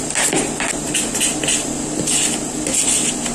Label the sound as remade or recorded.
recorded